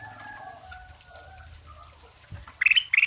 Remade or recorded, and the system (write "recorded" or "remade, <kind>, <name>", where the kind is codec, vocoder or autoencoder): recorded